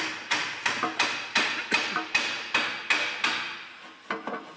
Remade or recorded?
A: recorded